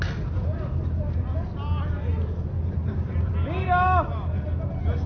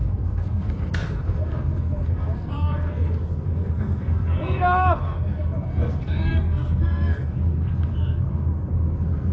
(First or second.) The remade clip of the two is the second